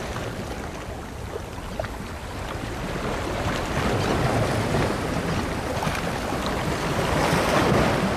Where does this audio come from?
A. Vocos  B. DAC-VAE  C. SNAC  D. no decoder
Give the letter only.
D